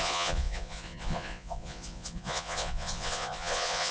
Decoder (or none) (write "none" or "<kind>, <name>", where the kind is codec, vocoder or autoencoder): vocoder, Vocos